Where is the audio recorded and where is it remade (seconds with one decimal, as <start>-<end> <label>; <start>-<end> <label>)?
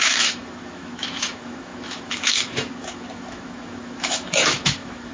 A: 0.0-5.1 remade